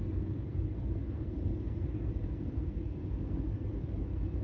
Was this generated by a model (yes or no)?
yes